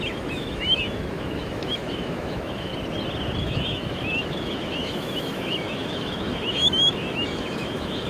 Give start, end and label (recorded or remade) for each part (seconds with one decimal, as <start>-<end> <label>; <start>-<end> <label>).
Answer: 0.0-2.7 remade; 2.7-3.4 recorded; 3.4-8.1 remade